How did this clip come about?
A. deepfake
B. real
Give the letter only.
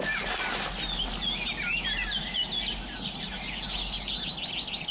B